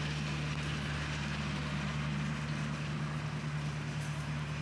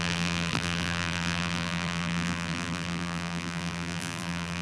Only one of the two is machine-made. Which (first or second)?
second